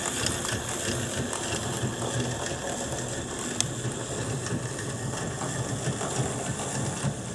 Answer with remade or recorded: recorded